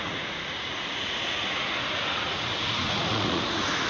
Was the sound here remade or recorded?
remade